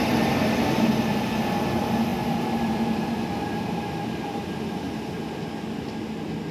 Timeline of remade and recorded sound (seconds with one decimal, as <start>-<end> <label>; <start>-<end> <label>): 0.0-6.5 recorded